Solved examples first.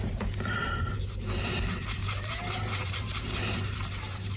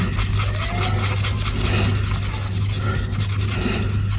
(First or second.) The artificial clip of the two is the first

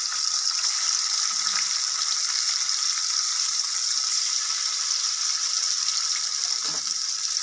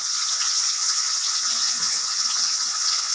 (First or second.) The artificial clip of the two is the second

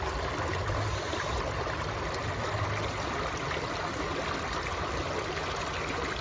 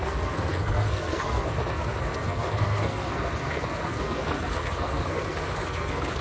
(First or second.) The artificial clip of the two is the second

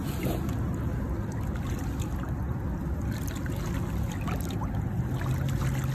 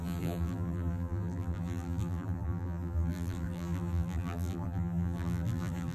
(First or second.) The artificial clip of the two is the second